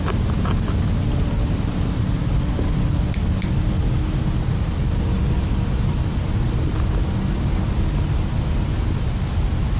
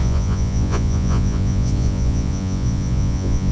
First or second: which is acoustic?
first